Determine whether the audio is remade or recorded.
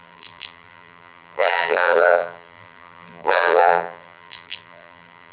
remade